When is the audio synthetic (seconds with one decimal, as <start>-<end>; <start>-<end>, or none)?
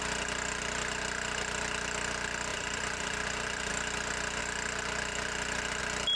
2.5-3.7